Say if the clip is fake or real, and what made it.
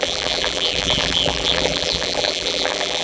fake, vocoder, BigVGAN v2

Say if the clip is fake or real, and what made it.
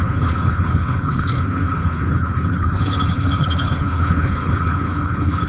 fake, codec, HILCodec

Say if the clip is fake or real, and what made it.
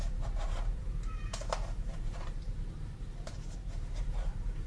fake, vocoder, BigVGAN v2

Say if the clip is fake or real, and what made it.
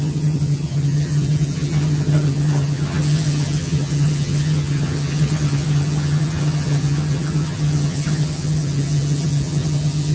fake, vocoder, HiFi-GAN